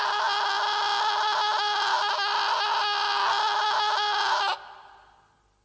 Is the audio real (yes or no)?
yes